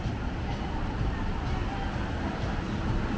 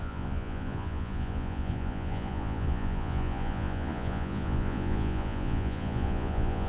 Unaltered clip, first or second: first